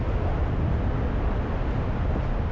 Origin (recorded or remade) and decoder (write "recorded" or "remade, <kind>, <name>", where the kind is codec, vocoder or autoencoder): recorded